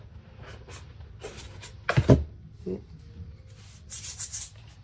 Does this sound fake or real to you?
real